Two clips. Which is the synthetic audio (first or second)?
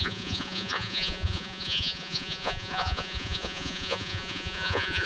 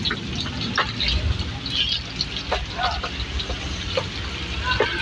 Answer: first